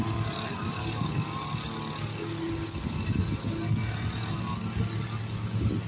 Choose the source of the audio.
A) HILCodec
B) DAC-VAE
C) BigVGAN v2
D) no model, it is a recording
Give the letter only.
D